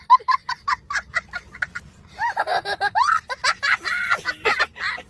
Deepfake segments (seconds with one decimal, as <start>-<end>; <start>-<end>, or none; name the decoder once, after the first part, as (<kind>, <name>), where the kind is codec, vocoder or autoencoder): none